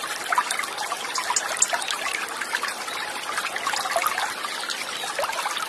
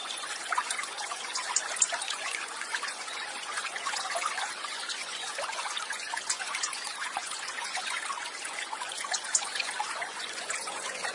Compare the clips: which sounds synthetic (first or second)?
second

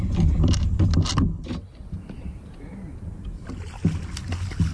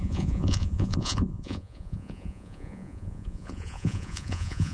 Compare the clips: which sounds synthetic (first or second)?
second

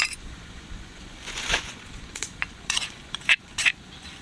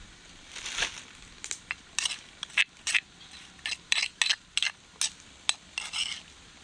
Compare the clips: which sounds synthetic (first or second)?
first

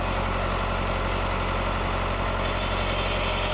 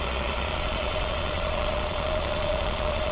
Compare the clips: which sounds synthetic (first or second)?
second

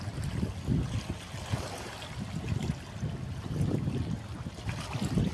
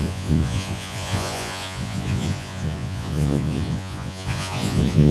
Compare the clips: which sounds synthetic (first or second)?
second